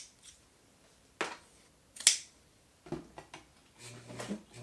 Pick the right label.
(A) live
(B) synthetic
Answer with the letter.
A